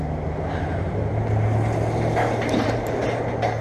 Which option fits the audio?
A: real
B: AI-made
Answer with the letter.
A